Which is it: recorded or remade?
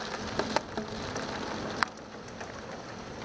recorded